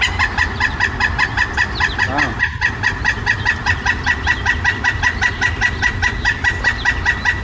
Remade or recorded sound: recorded